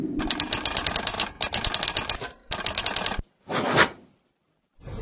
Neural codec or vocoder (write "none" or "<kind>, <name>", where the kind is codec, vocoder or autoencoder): none